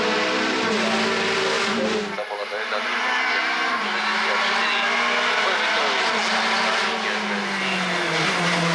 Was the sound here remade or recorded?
recorded